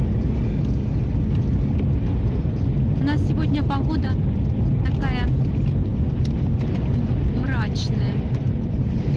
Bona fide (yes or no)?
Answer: yes